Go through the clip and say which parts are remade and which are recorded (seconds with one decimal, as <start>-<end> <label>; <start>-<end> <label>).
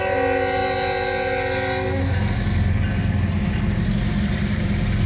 0.0-5.1 recorded